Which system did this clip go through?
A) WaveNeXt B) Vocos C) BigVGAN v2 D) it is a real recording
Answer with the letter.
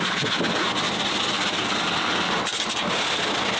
D